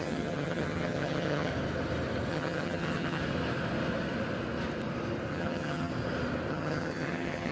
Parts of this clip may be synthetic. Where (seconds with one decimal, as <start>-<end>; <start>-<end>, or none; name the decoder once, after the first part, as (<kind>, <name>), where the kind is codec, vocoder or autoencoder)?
0.0-1.5 (vocoder, HiFi-GAN); 2.3-3.2; 5.3-5.9; 6.5-7.5